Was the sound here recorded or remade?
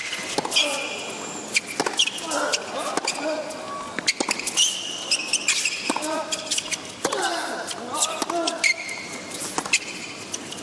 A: recorded